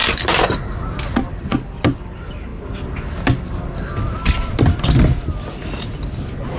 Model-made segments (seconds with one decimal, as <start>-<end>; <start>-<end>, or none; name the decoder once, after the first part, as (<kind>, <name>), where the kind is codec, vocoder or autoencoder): none